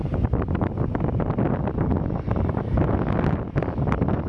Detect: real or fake real